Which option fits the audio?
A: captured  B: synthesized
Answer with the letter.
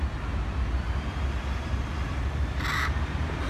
A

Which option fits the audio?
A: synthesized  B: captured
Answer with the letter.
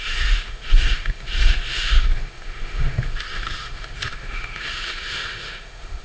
A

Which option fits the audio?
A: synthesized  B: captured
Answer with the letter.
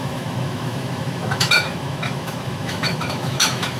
A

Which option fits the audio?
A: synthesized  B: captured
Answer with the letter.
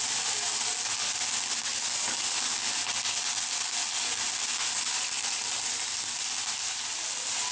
B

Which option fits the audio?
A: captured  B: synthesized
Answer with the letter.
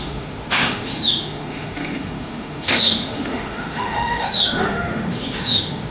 B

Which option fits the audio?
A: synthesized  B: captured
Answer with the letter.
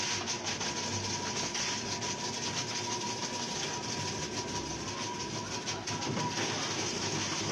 B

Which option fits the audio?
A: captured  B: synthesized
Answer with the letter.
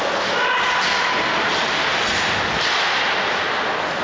A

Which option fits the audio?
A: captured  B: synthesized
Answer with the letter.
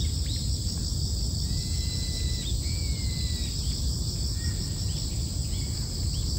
A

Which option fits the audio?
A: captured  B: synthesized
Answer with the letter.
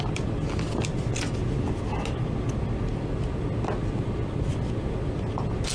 A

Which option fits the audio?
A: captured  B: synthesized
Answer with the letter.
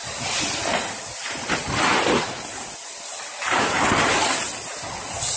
A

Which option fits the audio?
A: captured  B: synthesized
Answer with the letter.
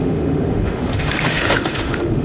B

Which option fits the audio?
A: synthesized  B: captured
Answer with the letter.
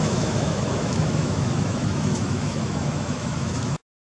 A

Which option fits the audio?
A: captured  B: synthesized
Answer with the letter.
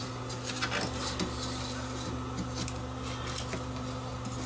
A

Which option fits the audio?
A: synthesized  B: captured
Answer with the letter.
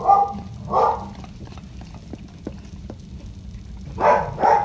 B